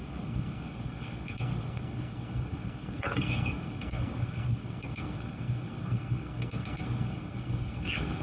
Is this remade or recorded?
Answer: remade